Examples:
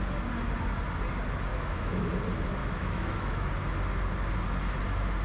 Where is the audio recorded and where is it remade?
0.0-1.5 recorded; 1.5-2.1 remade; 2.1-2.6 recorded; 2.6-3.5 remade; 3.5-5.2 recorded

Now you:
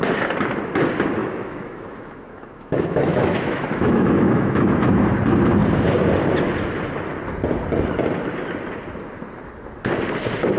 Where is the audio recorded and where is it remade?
0.0-1.2 recorded; 1.2-4.9 remade; 4.9-10.6 recorded

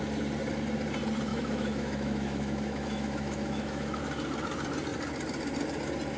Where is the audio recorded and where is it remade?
0.0-1.3 recorded; 1.3-4.0 remade; 4.0-6.2 recorded

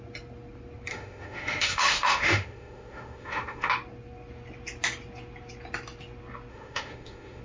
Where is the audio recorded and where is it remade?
0.0-0.9 recorded; 0.9-3.7 remade; 3.7-6.5 recorded; 6.5-7.4 remade

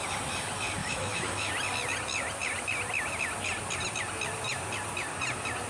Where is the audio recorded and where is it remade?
0.0-0.8 recorded; 0.8-1.5 remade; 1.5-5.7 recorded

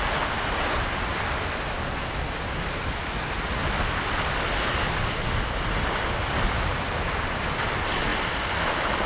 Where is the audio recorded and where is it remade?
0.0-9.1 recorded

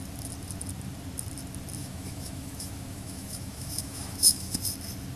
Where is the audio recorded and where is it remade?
0.0-1.8 recorded; 1.8-4.6 remade; 4.6-5.2 recorded

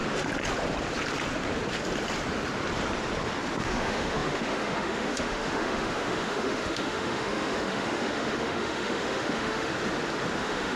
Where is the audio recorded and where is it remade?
0.0-3.6 recorded; 3.6-9.7 remade; 9.7-10.4 recorded; 10.4-10.8 remade